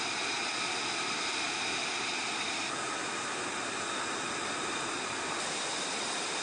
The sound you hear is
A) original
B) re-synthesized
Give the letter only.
A